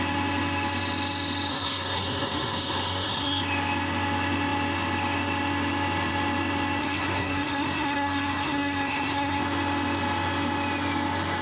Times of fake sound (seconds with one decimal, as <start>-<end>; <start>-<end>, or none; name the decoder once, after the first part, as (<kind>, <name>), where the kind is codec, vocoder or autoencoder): 1.5-3.4 (codec, SNAC); 6.8-9.4